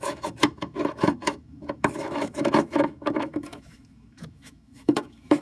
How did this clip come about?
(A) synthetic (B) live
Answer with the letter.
A